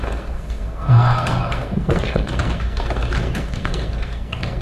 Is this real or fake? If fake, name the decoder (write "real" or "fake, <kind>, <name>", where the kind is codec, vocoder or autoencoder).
fake, codec, SNAC